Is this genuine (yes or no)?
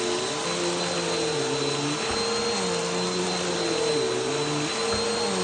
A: yes